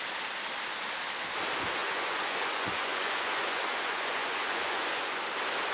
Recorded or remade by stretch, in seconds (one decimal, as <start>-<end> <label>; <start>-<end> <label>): 0.0-1.8 recorded; 1.8-5.2 remade; 5.2-5.7 recorded